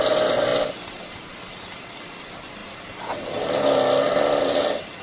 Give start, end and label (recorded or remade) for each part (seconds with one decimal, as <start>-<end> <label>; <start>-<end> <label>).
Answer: 0.0-5.0 recorded